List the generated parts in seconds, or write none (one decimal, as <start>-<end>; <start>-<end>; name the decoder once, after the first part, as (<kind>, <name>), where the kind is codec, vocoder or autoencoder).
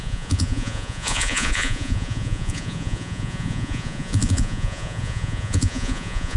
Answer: 0.0-6.4 (vocoder, Vocos)